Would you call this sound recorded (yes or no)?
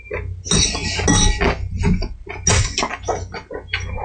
yes